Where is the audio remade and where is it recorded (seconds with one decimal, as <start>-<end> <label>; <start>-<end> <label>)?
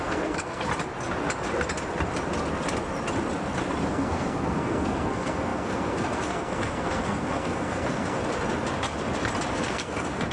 0.0-0.7 remade; 0.7-3.9 recorded; 3.9-8.2 remade; 8.2-9.5 recorded; 9.5-10.3 remade